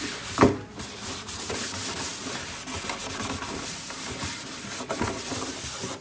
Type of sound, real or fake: real